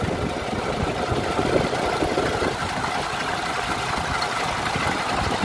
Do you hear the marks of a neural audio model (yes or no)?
no